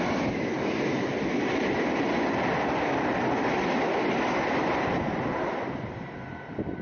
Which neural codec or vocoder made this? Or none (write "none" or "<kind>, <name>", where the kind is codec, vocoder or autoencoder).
none